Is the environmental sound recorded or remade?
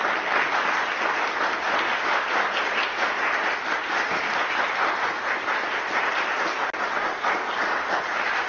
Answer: recorded